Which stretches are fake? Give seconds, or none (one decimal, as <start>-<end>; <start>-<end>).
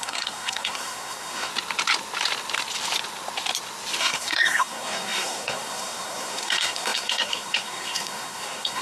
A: 0.0-1.5; 4.0-8.8